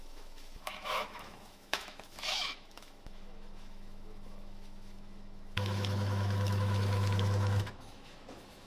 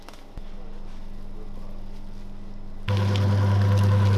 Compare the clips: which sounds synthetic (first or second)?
first